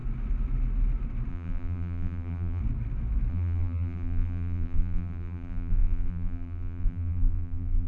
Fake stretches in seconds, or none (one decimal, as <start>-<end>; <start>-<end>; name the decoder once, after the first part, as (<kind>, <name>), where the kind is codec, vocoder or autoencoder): 1.3-2.6 (vocoder, BigVGAN v2); 3.3-7.9